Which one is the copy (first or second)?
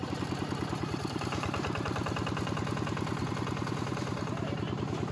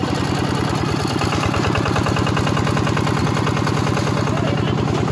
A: first